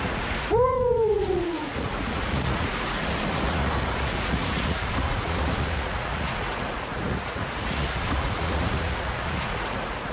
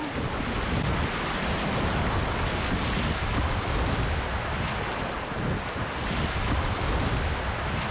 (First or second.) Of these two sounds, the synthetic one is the first